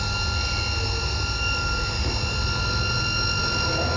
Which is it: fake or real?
real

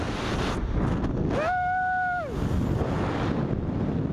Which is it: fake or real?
real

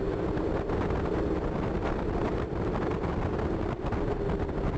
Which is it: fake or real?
real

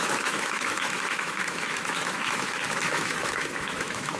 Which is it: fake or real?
fake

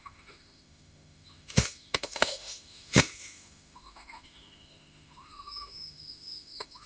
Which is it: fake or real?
fake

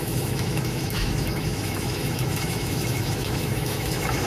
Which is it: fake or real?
fake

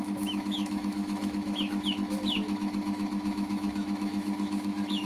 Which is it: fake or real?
fake